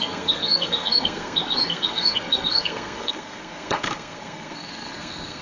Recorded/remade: remade